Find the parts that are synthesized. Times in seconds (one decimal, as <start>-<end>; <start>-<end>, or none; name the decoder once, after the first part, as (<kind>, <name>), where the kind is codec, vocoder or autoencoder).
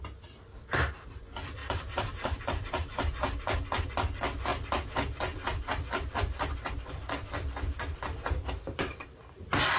0.6-1.1 (vocoder, BigVGAN v2); 1.6-2.4; 7.9-9.2